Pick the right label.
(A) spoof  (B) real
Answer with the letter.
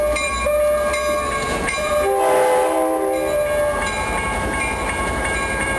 A